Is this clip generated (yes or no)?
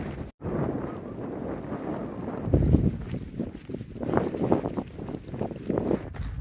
no